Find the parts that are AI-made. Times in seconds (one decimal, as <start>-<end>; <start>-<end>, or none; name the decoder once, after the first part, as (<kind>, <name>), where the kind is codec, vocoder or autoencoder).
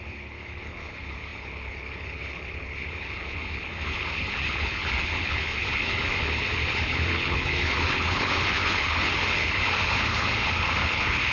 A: 0.0-11.3 (codec, HILCodec)